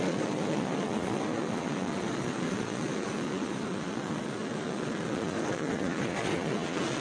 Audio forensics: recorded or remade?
remade